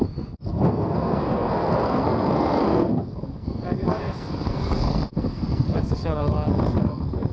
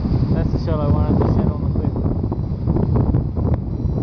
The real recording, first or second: second